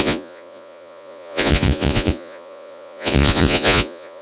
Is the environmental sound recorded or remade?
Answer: remade